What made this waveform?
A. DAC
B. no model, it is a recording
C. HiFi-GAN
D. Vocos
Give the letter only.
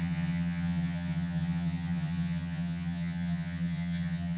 C